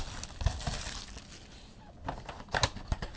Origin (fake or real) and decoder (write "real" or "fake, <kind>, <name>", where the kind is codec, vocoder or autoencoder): real